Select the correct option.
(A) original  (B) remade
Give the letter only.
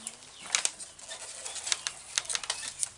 A